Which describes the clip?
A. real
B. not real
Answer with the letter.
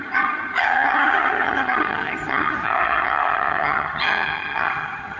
B